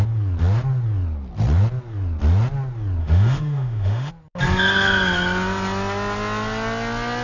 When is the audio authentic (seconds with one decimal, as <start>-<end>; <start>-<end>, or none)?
0.0-3.0; 4.1-7.2